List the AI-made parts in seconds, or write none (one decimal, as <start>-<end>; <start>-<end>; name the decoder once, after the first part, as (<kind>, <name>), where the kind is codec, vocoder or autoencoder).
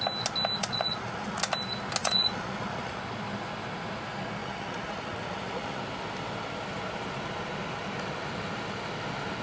0.6-1.4 (vocoder, Vocos); 2.0-3.0; 4.4-5.8